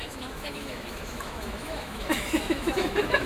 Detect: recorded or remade remade